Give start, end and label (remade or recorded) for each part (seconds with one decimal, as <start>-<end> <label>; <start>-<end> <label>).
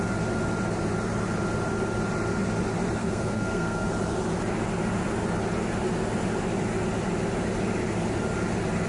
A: 0.0-3.0 recorded; 3.0-3.9 remade; 3.9-8.9 recorded